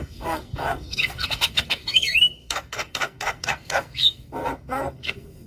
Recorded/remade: remade